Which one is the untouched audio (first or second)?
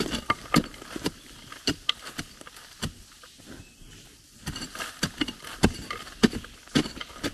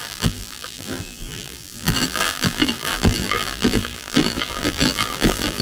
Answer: first